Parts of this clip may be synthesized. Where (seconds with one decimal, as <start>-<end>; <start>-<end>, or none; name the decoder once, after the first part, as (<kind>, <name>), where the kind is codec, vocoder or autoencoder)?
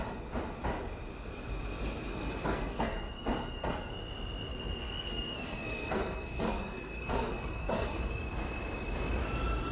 2.1-3.9 (codec, SNAC); 4.5-8.0